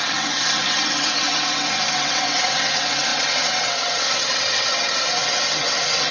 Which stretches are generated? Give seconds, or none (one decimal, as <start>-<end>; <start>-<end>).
0.0-6.1